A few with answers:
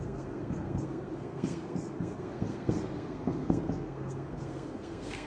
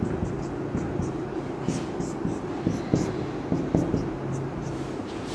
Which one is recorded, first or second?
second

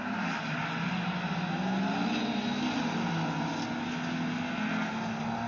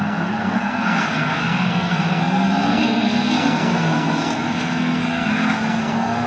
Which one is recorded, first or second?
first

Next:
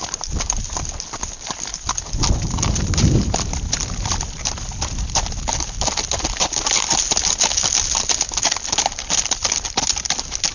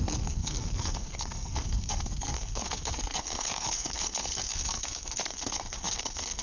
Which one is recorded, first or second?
first